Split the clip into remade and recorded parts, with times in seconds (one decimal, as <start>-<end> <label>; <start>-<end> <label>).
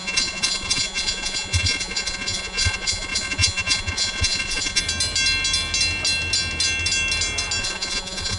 0.0-4.8 remade; 4.8-7.6 recorded; 7.6-8.4 remade